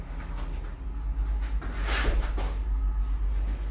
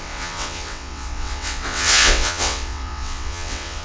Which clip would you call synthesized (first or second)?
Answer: second